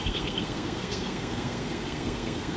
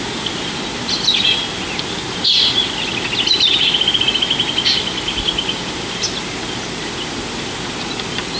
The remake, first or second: first